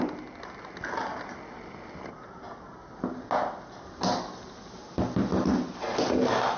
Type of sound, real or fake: real